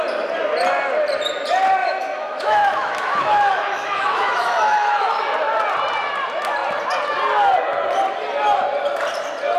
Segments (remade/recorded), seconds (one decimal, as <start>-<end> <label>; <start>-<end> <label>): 0.0-1.8 recorded; 1.8-5.2 remade; 5.2-9.6 recorded

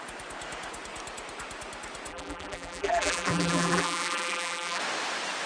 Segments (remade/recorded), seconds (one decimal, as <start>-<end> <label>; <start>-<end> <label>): 0.0-2.1 recorded; 2.1-4.8 remade; 4.8-5.5 recorded